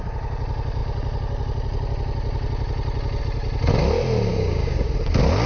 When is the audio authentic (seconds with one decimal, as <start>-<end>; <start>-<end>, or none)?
0.0-4.3; 4.9-5.5